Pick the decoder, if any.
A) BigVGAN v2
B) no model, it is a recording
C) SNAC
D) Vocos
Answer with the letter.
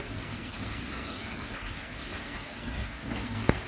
C